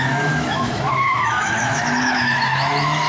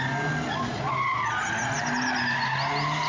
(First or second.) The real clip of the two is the second